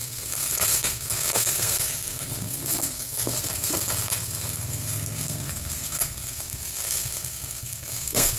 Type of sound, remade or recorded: remade